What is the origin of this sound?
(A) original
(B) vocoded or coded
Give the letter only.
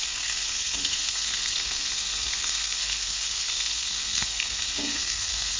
B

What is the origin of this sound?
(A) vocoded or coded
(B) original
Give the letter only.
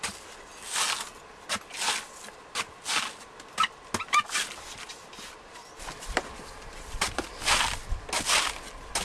B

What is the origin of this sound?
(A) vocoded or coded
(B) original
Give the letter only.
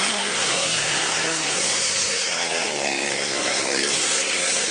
A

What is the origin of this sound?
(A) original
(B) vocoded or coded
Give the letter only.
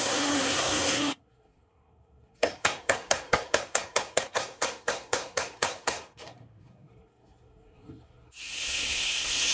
B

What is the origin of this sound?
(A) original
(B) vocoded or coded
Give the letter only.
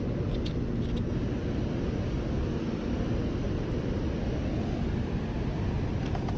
A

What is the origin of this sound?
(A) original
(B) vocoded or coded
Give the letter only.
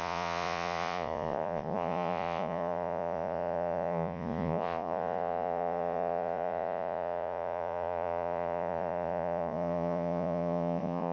B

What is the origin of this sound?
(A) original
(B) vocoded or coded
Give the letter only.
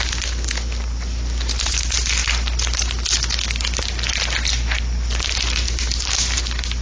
A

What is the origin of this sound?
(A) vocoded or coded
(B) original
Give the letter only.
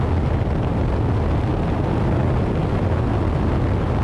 B